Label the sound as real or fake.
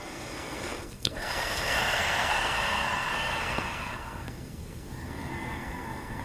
fake